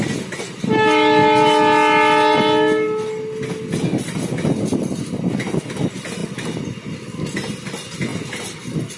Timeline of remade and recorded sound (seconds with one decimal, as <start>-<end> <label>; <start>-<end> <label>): 0.0-9.0 recorded